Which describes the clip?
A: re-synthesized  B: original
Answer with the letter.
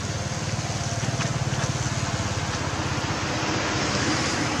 B